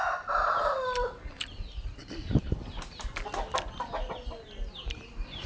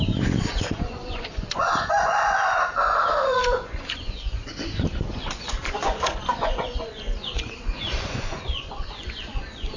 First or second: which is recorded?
first